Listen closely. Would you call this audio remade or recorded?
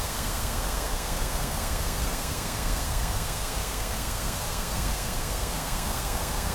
remade